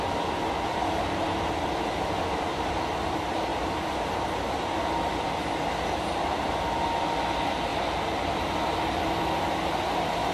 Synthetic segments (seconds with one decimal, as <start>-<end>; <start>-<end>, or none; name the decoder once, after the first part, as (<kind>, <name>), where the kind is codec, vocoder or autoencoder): none